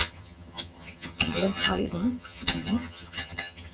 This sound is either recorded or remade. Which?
remade